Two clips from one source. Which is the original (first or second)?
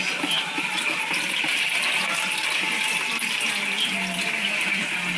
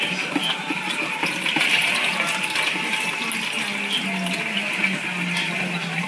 second